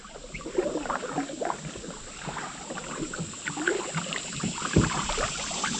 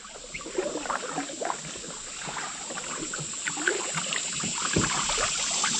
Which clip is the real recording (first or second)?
second